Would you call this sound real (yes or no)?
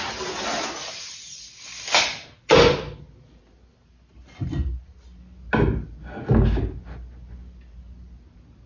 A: yes